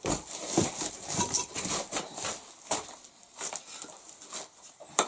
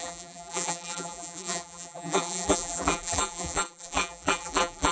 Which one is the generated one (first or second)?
second